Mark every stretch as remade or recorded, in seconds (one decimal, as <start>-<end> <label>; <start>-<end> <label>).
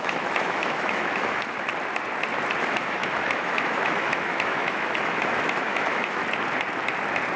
0.0-1.7 remade; 1.7-2.6 recorded; 2.6-6.2 remade; 6.2-7.4 recorded